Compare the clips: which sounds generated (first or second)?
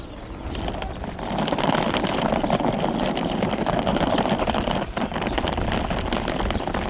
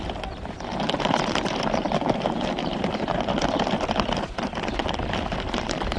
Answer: second